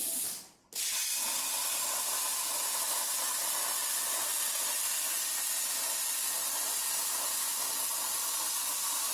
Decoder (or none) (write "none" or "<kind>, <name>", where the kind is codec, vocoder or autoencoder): none